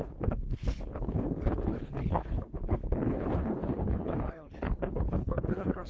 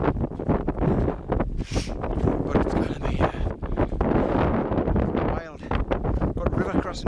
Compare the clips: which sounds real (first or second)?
second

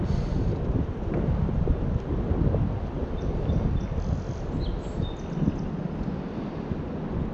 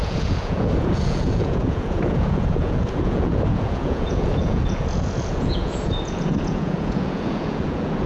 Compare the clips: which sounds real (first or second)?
first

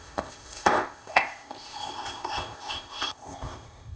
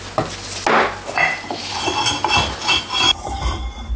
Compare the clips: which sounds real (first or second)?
second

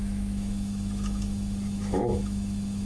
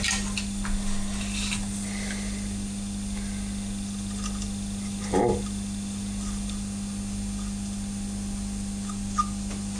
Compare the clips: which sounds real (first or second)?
second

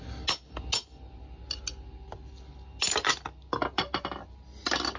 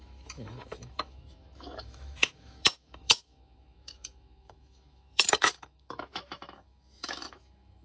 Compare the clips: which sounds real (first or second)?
first